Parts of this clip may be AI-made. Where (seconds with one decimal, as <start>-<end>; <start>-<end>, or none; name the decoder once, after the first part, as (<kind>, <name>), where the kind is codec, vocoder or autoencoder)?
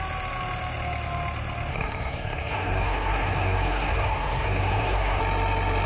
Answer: 1.7-5.2 (codec, SNAC)